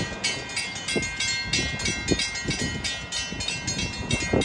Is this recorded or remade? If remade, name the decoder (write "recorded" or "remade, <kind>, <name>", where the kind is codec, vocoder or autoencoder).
recorded